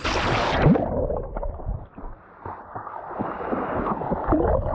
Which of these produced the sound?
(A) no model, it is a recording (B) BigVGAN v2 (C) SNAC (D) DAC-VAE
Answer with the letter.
A